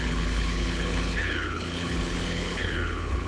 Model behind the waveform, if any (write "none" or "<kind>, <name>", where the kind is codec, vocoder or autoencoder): codec, HILCodec